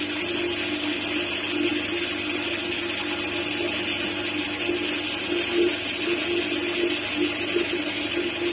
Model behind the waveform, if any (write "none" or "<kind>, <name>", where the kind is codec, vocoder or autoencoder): none